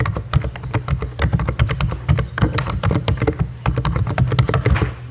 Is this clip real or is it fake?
real